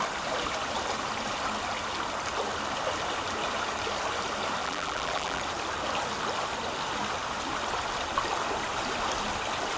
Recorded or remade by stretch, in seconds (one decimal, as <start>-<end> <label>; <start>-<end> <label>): 0.0-4.6 recorded; 4.6-5.4 remade; 5.4-9.8 recorded